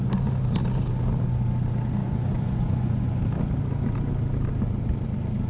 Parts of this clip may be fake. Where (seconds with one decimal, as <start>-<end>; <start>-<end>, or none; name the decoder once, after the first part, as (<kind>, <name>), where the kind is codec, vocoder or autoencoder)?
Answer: 2.0-3.2 (vocoder, Vocos)